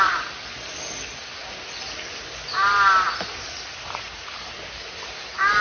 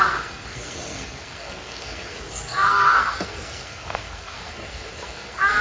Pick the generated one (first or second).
second